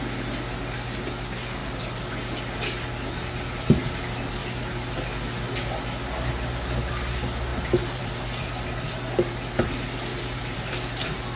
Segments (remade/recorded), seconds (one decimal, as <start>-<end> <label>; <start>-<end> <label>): 0.0-1.6 recorded; 1.6-2.1 remade; 2.1-7.5 recorded; 7.5-8.1 remade; 8.1-10.1 recorded; 10.1-11.4 remade